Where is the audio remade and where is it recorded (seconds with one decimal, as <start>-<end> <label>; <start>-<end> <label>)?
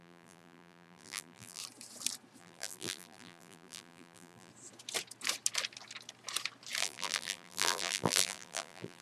0.0-1.6 remade; 1.6-2.4 recorded; 2.4-4.5 remade; 4.5-6.8 recorded; 6.8-9.0 remade